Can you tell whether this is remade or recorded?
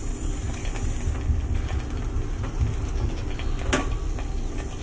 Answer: recorded